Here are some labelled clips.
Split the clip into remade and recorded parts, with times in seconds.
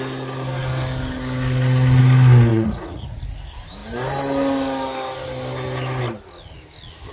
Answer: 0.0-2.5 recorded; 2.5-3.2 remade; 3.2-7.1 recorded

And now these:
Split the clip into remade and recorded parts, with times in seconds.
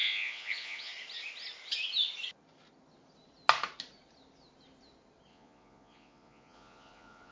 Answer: 0.0-0.9 remade; 0.9-5.3 recorded; 5.3-7.3 remade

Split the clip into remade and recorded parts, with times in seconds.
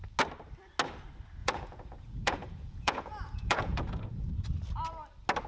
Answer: 0.0-1.4 recorded; 1.4-4.3 remade; 4.3-5.5 recorded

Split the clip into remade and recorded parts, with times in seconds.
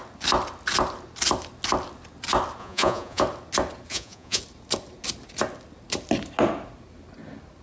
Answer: 0.0-2.6 recorded; 2.6-3.2 remade; 3.2-3.9 recorded; 3.9-4.4 remade; 4.4-7.6 recorded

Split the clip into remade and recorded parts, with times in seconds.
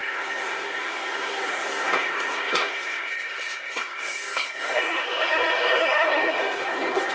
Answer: 0.0-7.1 remade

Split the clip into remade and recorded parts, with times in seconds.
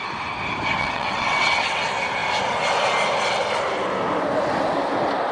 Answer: 0.0-0.8 recorded; 0.8-1.8 remade; 1.8-5.3 recorded